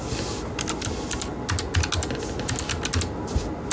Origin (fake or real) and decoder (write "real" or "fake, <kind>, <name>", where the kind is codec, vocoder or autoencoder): real